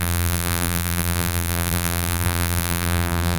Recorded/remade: remade